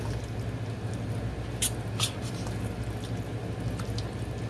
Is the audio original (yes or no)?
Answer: yes